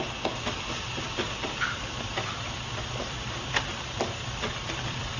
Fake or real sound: fake